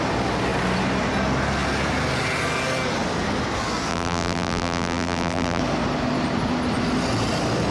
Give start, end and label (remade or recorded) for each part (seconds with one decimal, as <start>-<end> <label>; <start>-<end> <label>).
0.0-3.9 recorded; 3.9-5.6 remade; 5.6-7.7 recorded